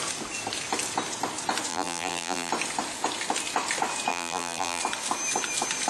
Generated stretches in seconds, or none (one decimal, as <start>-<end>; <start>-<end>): 1.7-2.5; 4.1-4.8